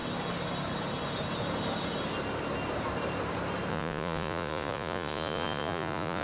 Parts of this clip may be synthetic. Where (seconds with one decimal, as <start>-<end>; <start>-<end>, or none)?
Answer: 3.7-6.2